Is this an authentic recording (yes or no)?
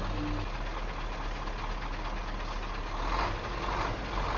yes